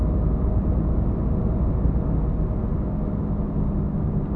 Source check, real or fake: real